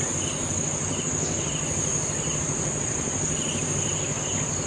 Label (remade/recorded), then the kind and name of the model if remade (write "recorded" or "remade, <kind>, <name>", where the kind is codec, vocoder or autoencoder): recorded